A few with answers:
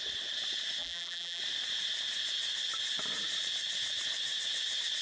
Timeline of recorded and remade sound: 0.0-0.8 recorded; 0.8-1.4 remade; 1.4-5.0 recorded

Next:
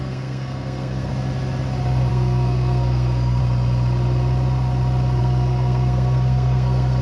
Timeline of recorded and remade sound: 0.0-1.1 remade; 1.1-2.1 recorded; 2.1-3.4 remade; 3.4-5.2 recorded; 5.2-7.0 remade

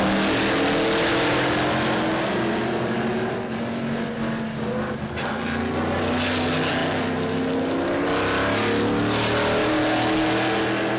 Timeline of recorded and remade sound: 0.0-11.0 recorded

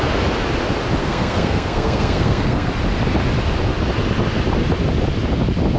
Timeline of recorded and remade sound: 0.0-1.0 recorded; 1.0-2.7 remade; 2.7-5.8 recorded

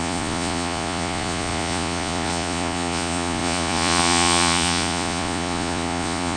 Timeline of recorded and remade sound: 0.0-6.4 remade

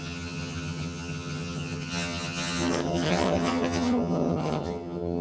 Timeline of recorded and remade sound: 0.0-5.2 remade